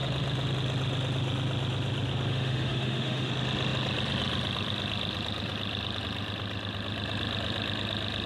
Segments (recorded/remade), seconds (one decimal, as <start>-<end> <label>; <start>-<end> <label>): 0.0-2.3 recorded; 2.3-3.3 remade; 3.3-8.3 recorded